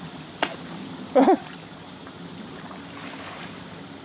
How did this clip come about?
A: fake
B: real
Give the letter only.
B